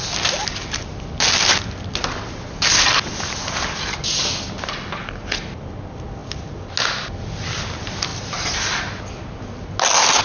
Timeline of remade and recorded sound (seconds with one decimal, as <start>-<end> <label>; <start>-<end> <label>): 0.0-10.2 recorded